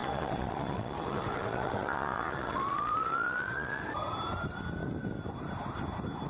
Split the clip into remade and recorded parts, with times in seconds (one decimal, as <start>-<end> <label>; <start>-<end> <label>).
0.0-3.8 remade; 3.8-6.3 recorded